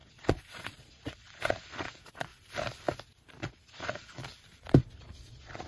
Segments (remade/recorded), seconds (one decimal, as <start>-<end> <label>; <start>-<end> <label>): 0.0-2.3 remade; 2.3-3.3 recorded; 3.3-4.2 remade; 4.2-4.8 recorded; 4.8-5.7 remade